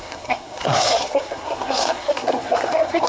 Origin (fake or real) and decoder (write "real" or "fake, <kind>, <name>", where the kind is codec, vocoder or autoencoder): fake, codec, SNAC